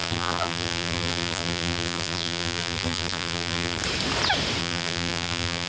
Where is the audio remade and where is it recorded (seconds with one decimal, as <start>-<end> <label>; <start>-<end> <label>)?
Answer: 0.0-3.8 remade; 3.8-4.6 recorded; 4.6-5.7 remade